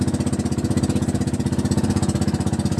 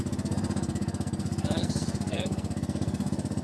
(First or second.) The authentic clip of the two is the first